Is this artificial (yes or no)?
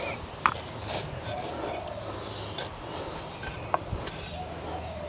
no